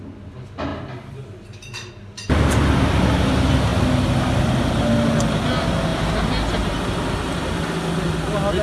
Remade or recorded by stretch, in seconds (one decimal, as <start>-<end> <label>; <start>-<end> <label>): 0.0-0.7 recorded; 0.7-1.9 remade; 1.9-8.6 recorded